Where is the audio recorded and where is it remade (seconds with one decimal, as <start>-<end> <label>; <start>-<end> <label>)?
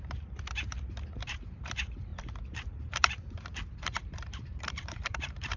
0.0-5.6 remade